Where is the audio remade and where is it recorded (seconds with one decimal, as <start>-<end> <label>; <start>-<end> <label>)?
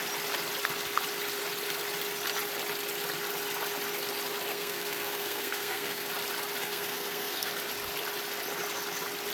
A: 0.0-4.5 recorded; 4.5-6.1 remade; 6.1-6.6 recorded; 6.6-7.5 remade; 7.5-9.3 recorded